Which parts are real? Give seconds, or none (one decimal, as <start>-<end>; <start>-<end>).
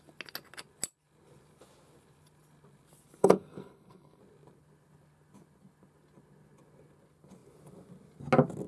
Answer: 0.0-3.2; 4.2-8.7